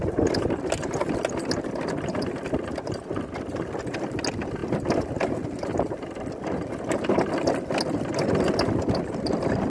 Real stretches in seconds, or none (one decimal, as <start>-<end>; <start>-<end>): 0.0-9.7

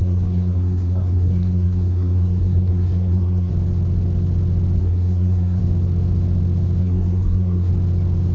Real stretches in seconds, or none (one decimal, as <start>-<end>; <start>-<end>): 3.5-4.8; 5.6-6.8; 7.7-8.3

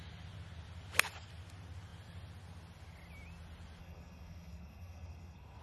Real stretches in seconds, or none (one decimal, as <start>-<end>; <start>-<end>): 0.0-3.8

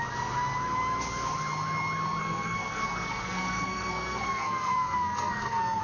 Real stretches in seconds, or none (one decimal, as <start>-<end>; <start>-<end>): 0.0-2.2

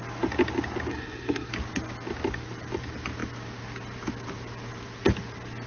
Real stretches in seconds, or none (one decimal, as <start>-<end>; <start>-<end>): 0.0-0.9; 1.5-5.7

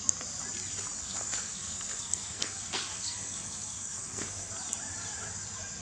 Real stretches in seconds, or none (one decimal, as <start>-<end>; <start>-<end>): 0.0-1.0; 4.5-5.8

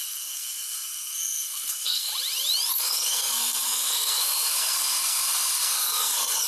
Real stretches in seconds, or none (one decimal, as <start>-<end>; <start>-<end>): 2.1-2.7

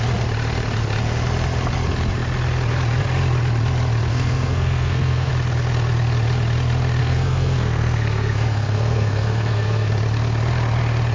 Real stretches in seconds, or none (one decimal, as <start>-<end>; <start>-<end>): 0.0-4.1; 5.3-7.0; 9.9-11.1